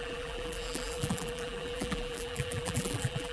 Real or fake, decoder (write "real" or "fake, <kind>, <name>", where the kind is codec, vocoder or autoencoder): fake, vocoder, BigVGAN v2